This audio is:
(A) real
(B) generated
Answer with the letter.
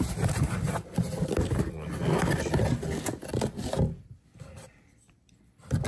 A